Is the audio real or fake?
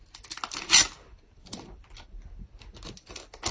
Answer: real